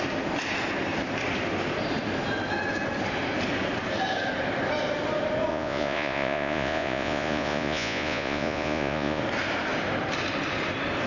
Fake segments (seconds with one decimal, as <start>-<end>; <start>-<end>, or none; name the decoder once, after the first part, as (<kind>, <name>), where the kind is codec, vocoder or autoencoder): 5.5-9.2 (vocoder, Vocos)